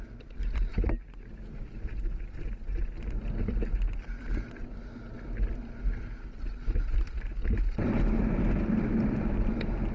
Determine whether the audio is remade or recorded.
recorded